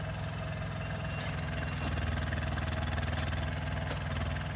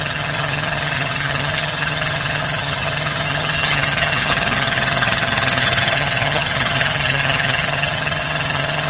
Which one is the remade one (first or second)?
second